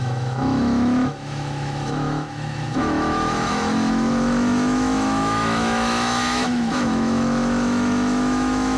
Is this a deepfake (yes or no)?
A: yes